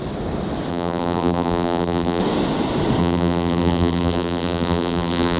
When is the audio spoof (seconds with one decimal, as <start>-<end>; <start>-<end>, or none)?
0.7-2.2; 3.0-5.4